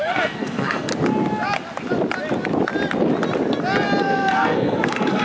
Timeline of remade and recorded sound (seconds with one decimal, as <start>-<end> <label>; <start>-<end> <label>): 0.0-0.9 remade; 0.9-4.0 recorded; 4.0-5.2 remade